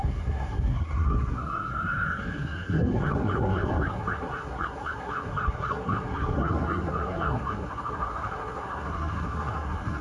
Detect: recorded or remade remade